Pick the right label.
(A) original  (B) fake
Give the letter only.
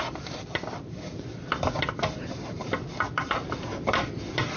B